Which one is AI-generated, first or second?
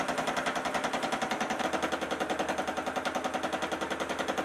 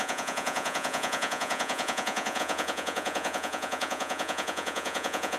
second